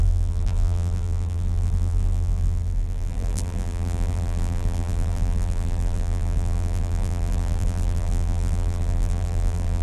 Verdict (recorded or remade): remade